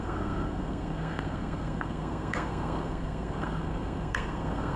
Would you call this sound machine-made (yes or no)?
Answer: yes